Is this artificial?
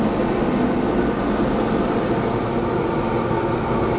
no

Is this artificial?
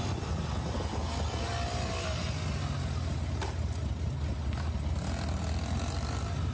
no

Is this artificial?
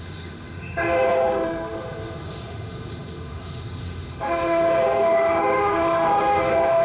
yes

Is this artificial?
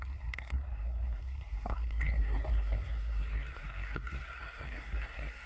yes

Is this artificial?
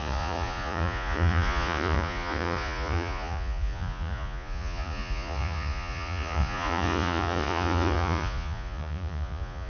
yes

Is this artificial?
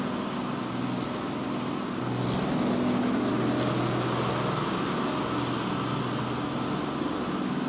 no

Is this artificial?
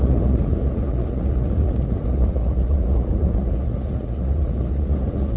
yes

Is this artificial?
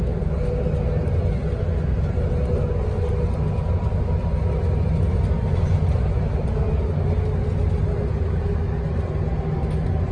no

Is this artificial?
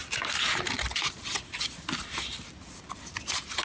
no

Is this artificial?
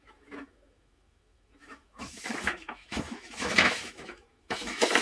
yes